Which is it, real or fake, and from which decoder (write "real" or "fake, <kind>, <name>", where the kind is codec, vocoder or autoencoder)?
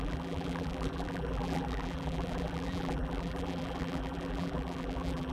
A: fake, vocoder, BigVGAN v2